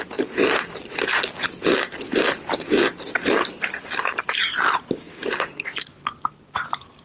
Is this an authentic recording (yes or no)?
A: yes